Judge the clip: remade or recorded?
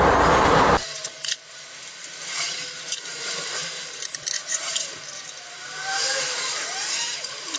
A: remade